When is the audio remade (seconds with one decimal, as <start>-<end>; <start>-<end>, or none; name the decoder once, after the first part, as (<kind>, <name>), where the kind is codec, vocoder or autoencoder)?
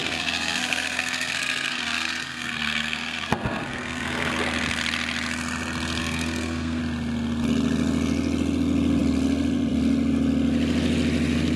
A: 0.0-4.3 (codec, SNAC); 6.0-6.8